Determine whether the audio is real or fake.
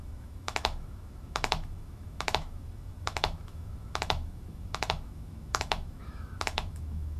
fake